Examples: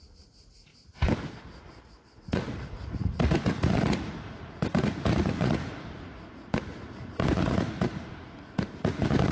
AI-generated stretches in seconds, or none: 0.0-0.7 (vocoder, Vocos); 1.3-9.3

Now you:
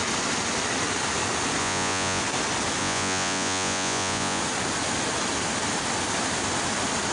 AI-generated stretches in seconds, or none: 1.6-2.2 (vocoder, Vocos); 2.8-4.4

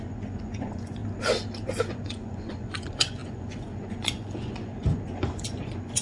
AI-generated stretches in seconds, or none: 0.0-1.0 (vocoder, Vocos); 1.9-6.0